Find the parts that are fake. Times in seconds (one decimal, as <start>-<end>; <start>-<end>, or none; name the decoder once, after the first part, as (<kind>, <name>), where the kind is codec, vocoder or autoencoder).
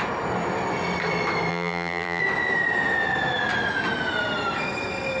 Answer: 1.5-2.2 (vocoder, BigVGAN v2)